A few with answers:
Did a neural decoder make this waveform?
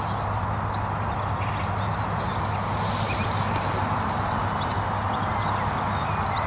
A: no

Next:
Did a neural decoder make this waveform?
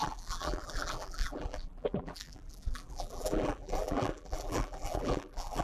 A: yes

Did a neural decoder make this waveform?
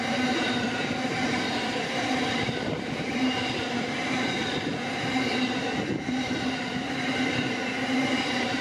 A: yes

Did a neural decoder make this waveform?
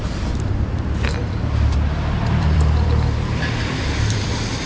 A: yes